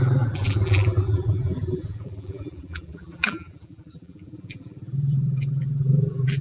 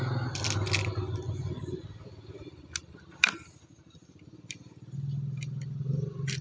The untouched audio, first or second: second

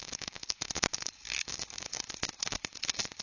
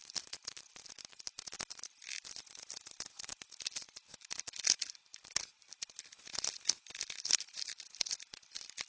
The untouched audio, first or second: second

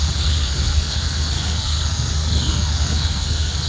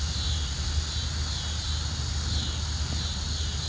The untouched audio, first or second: second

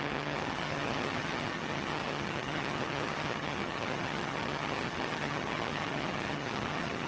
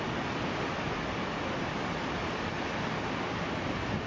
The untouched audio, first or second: second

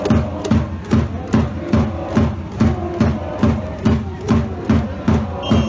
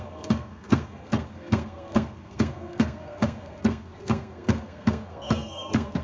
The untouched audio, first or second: first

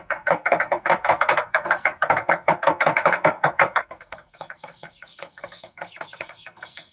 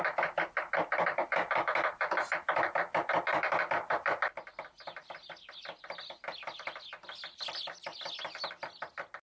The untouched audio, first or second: second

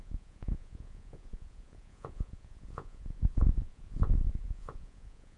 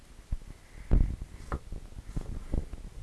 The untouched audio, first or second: second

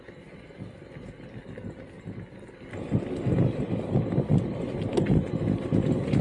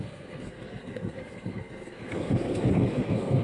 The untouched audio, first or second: first